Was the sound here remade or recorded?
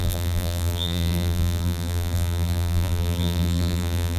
remade